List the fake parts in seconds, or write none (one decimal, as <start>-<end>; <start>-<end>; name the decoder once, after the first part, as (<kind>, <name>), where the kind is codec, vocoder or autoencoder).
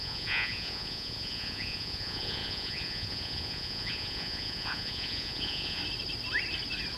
0.0-5.8 (vocoder, Vocos)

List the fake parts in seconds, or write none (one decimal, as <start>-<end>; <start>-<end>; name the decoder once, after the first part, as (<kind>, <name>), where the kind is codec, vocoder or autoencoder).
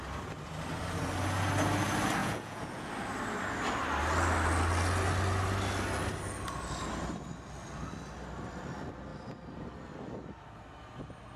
2.2-2.9 (vocoder, Vocos)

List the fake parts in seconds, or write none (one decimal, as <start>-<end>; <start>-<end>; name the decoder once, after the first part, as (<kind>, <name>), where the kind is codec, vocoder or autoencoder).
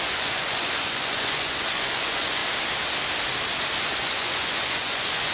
0.0-2.4 (vocoder, Vocos); 3.8-5.3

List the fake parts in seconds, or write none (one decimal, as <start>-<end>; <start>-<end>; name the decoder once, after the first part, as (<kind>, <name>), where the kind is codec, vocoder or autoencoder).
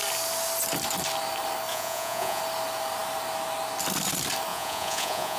1.7-2.4 (vocoder, Vocos); 4.5-5.4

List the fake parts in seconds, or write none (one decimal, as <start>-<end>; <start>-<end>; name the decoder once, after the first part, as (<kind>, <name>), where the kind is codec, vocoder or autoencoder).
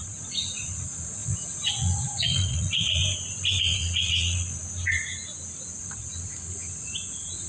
0.0-3.0 (vocoder, Vocos); 3.6-4.6; 5.8-7.5